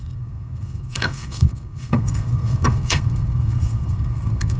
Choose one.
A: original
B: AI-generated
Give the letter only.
B